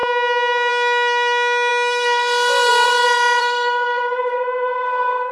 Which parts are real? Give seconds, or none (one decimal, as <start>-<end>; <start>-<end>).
0.0-3.4